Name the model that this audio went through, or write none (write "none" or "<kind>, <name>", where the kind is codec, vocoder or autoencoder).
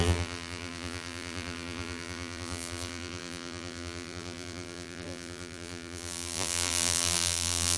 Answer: vocoder, BigVGAN v2